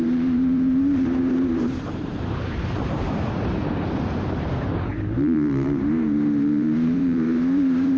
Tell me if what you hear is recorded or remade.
remade